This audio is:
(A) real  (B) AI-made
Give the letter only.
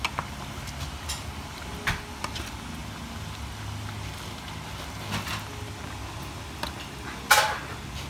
A